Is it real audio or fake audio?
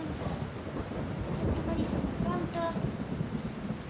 real